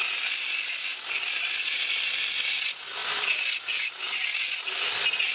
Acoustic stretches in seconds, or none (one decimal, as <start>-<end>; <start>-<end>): 0.0-5.3